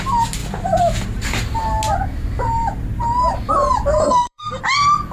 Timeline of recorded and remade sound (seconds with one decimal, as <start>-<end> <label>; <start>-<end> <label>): 0.0-4.0 recorded; 4.0-4.6 remade; 4.6-5.1 recorded